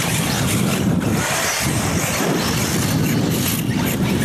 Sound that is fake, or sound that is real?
real